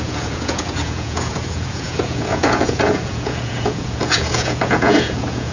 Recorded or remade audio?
remade